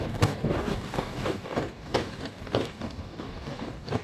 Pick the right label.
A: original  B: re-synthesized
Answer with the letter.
B